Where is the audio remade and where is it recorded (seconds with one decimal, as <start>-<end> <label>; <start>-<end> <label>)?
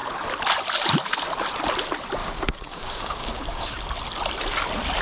0.0-2.2 recorded; 2.2-3.7 remade; 3.7-5.0 recorded